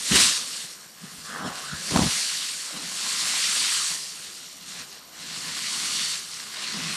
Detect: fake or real fake